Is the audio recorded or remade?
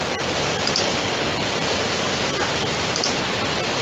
recorded